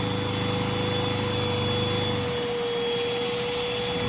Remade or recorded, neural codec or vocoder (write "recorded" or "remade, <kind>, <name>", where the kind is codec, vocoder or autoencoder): recorded